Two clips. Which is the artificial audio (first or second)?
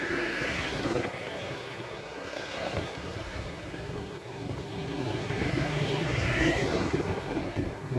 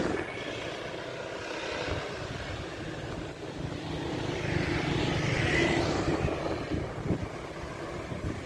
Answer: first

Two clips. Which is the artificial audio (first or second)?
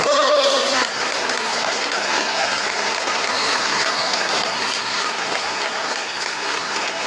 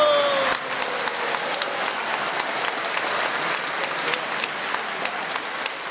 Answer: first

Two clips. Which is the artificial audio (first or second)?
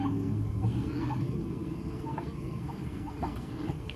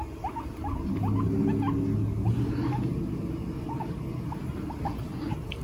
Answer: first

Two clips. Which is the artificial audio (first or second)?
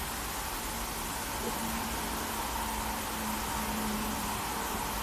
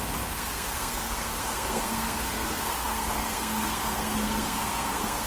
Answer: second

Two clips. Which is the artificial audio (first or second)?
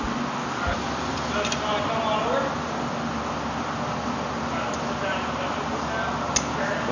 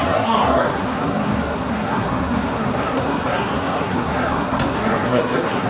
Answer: second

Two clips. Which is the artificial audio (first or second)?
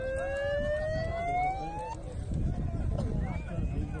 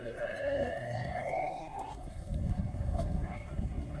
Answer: second